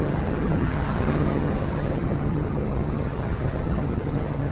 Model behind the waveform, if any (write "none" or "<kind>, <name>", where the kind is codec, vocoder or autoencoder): vocoder, HiFi-GAN